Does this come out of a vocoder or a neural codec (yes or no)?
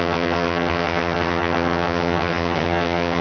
yes